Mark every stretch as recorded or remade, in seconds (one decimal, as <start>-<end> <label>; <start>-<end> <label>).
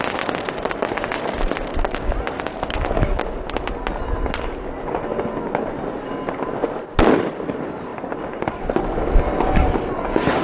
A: 0.0-7.9 recorded; 7.9-9.0 remade; 9.0-10.4 recorded